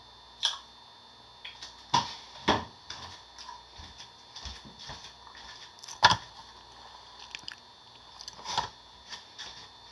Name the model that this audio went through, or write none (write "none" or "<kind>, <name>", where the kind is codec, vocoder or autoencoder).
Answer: none